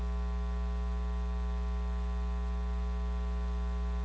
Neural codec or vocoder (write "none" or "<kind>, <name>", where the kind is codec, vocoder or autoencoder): none